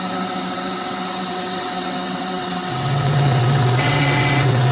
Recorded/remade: remade